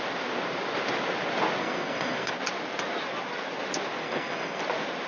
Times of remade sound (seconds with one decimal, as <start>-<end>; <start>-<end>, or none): 1.6-2.3; 4.0-4.6

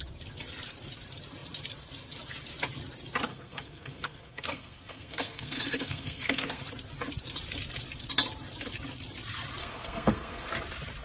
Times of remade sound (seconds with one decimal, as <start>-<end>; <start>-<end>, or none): 3.3-6.6; 9.6-10.5

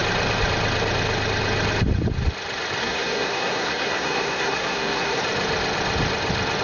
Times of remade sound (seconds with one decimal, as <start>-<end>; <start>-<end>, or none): 2.8-5.2

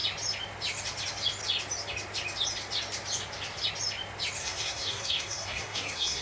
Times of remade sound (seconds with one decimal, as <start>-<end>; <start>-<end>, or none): 4.4-6.2

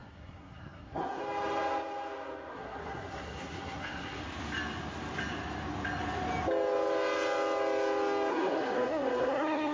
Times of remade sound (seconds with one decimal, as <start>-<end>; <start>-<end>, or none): 0.0-1.2; 2.5-4.2; 8.3-9.7

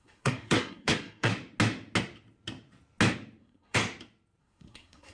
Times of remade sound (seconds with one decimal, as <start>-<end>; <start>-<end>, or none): 0.0-1.3; 3.4-3.8; 4.4-5.1

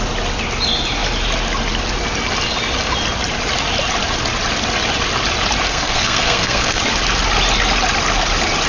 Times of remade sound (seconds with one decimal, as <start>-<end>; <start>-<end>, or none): 5.7-6.8